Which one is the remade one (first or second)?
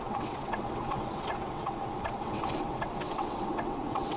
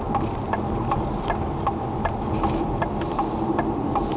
first